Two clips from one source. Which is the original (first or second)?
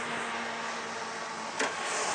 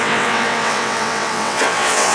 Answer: first